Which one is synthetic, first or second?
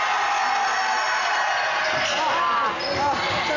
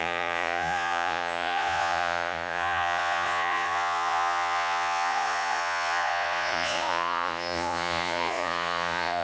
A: second